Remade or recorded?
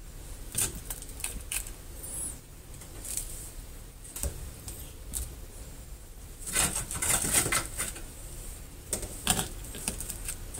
remade